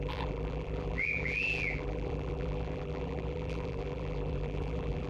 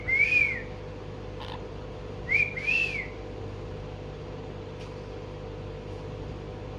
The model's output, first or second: first